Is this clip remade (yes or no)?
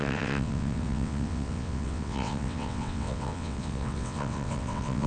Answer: yes